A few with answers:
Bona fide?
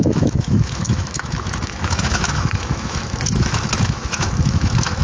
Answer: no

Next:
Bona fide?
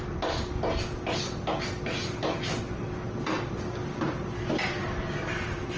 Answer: yes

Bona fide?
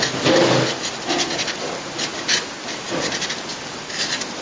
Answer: yes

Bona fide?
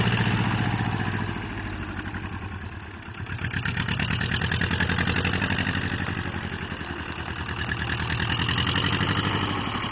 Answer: yes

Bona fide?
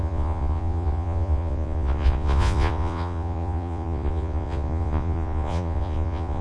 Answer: no